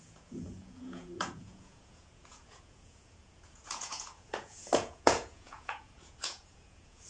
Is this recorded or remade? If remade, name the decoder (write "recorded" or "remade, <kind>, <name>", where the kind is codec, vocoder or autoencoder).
remade, vocoder, Vocos